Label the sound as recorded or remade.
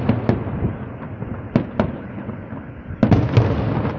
recorded